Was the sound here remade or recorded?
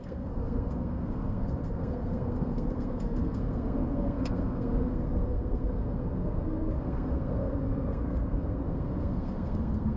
remade